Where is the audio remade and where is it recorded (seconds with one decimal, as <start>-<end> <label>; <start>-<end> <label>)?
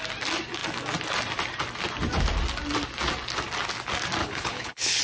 0.0-4.2 recorded; 4.2-5.0 remade